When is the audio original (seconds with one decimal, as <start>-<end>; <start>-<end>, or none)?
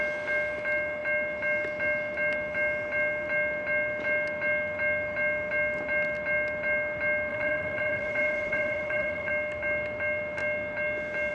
0.0-7.3; 9.3-11.3